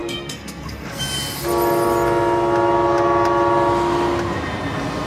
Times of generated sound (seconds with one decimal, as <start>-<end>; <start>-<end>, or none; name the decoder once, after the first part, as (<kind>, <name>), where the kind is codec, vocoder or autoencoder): 0.0-1.0 (codec, SNAC)